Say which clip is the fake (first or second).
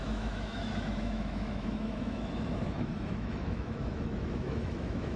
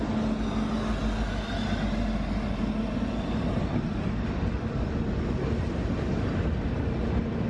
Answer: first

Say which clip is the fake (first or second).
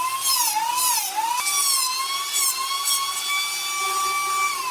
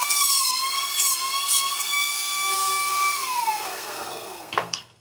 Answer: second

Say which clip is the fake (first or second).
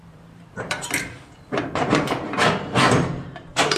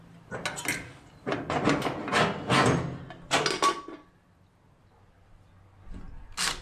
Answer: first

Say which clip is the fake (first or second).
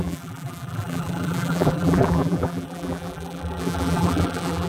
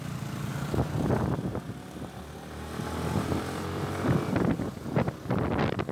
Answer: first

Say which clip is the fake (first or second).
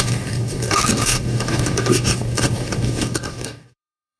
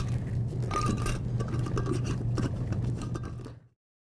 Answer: first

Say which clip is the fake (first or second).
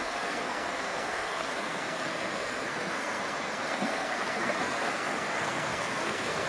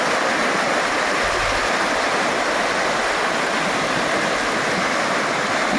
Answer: first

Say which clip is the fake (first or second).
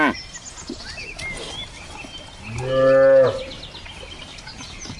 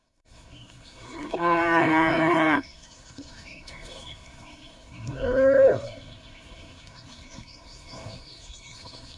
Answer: second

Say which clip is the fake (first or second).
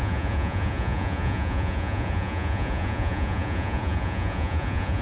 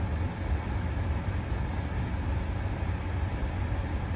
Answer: first